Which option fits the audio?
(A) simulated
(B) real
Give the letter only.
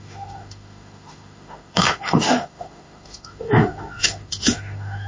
A